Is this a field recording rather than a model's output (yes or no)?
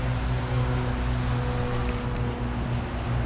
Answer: yes